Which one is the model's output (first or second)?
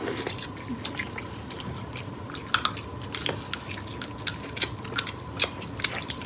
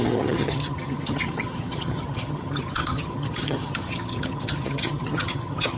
second